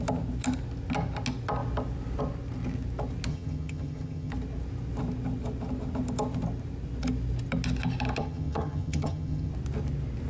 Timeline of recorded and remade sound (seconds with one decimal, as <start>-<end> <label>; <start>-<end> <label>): 0.0-3.3 recorded; 3.3-4.3 remade; 4.3-8.2 recorded; 8.2-9.5 remade; 9.5-10.3 recorded